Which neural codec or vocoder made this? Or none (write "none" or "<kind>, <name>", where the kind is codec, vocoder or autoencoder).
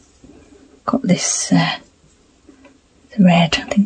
none